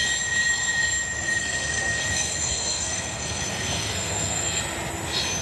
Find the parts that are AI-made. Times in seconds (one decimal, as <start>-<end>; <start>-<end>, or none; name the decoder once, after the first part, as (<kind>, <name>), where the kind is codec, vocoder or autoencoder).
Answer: 1.4-4.6 (codec, SNAC)